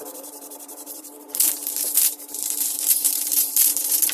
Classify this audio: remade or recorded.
remade